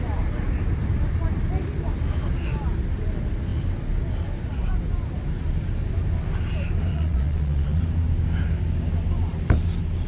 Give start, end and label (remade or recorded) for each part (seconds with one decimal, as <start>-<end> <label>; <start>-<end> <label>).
0.0-6.9 recorded; 6.9-7.8 remade; 7.8-10.1 recorded